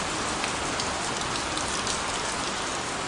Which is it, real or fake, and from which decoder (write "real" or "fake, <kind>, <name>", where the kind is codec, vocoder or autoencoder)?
real